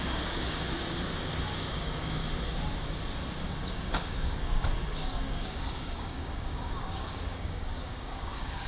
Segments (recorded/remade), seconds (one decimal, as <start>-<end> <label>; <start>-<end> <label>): 0.0-2.2 remade; 2.2-3.7 recorded; 3.7-8.7 remade